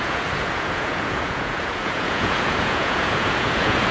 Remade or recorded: remade